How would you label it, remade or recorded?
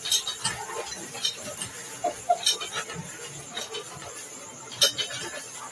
recorded